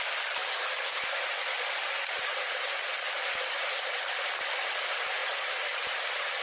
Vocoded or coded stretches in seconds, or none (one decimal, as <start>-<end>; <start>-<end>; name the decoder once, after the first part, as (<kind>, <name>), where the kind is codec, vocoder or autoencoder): none